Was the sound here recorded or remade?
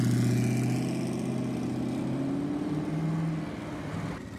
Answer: recorded